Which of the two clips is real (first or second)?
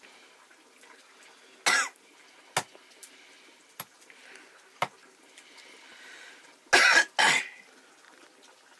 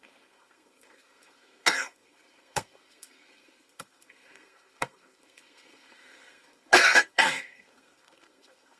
first